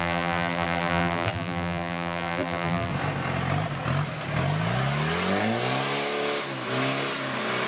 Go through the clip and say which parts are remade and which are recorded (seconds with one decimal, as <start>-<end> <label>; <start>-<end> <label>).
0.0-2.9 remade; 2.9-7.7 recorded